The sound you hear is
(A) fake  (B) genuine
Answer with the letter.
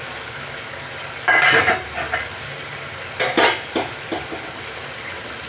B